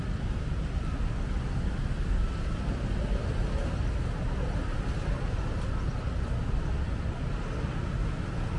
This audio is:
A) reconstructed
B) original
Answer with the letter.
B